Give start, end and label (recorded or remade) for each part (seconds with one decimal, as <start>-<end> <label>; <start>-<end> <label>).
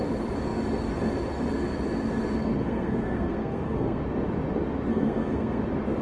0.0-2.6 recorded; 2.6-4.0 remade; 4.0-4.9 recorded; 4.9-5.6 remade; 5.6-6.0 recorded